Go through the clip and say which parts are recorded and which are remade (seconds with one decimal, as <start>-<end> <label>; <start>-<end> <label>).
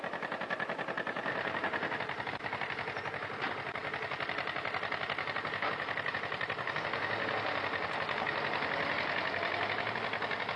0.0-10.6 recorded